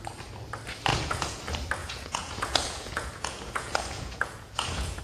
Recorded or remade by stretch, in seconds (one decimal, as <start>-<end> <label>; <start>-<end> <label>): 0.0-0.9 recorded; 0.9-1.4 remade; 1.4-1.8 recorded; 1.8-5.0 remade

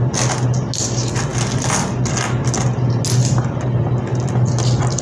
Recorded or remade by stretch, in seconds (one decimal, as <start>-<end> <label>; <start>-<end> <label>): 0.0-5.0 recorded

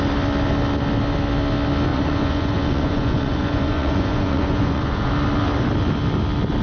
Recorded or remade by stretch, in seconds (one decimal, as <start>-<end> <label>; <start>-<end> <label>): 0.0-1.9 recorded; 1.9-5.1 remade; 5.1-6.6 recorded

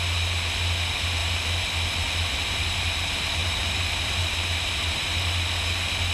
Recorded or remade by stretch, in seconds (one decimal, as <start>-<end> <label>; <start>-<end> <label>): 0.0-6.1 recorded

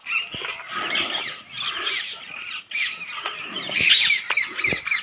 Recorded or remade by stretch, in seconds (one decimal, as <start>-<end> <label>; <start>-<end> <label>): 0.0-5.0 recorded

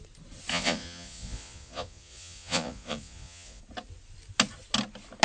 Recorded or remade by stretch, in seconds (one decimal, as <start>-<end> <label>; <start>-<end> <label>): 0.0-0.5 recorded; 0.5-3.6 remade; 3.6-5.2 recorded

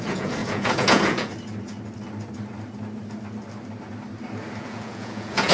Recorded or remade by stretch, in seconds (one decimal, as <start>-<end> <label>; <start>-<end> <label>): 0.0-1.3 remade; 1.3-4.6 recorded; 4.6-5.5 remade